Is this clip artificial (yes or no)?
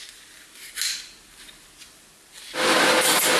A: no